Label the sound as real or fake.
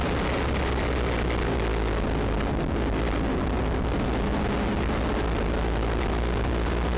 real